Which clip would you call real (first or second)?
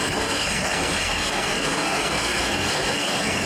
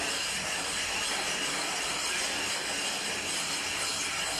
second